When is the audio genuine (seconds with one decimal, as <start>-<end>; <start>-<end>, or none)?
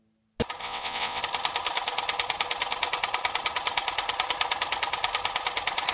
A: 0.0-0.6; 1.2-5.9